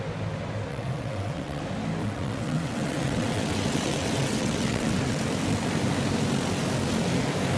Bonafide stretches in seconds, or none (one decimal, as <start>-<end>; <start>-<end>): 0.0-0.7; 1.6-2.0; 5.2-7.6